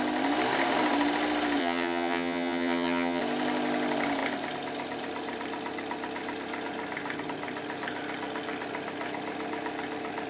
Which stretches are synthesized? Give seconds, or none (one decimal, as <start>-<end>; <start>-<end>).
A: 1.6-3.2